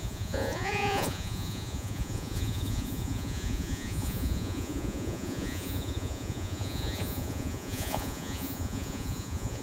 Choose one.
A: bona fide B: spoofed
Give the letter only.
B